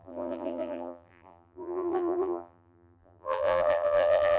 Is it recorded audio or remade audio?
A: remade